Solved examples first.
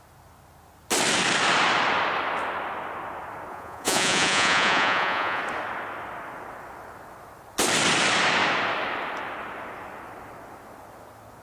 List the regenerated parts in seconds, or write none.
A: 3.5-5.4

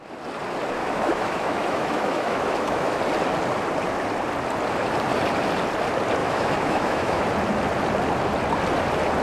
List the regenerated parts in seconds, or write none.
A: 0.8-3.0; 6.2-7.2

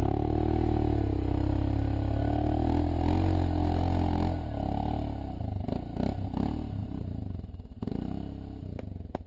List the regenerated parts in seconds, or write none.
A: 6.8-8.8

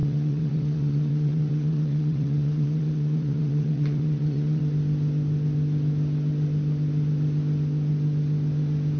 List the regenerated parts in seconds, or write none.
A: 0.0-4.6